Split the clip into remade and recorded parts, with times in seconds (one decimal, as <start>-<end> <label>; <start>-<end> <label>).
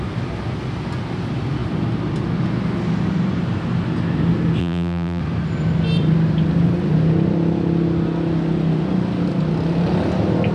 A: 0.0-4.6 recorded; 4.6-5.2 remade; 5.2-10.5 recorded